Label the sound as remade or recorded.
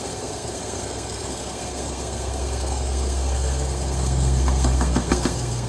remade